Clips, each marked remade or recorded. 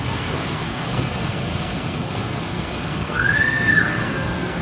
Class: remade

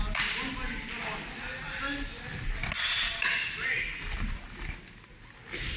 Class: recorded